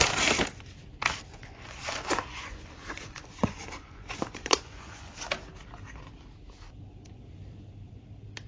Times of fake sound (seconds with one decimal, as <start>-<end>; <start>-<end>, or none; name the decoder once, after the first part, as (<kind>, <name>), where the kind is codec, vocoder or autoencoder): 1.3-5.1 (vocoder, Vocos)